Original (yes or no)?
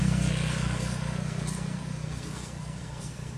no